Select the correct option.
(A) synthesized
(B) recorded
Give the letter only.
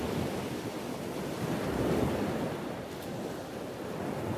B